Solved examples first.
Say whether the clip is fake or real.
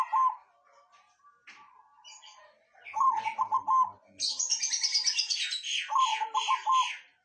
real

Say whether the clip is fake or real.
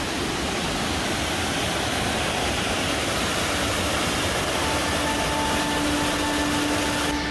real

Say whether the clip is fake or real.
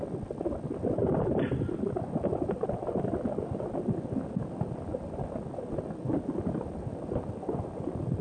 real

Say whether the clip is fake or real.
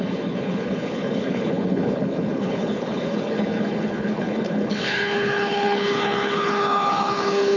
fake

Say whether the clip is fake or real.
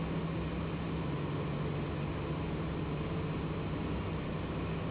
real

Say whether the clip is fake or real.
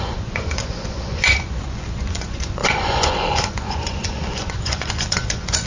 fake